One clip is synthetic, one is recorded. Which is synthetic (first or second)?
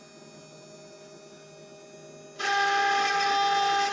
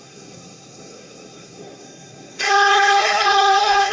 second